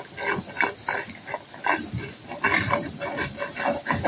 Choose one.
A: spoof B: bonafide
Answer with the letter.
B